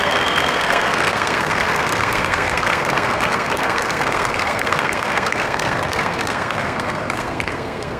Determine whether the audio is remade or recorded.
remade